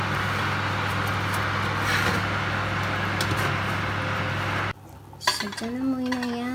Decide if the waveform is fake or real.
real